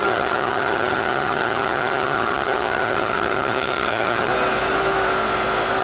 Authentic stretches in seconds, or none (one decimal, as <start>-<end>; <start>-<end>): 4.3-5.8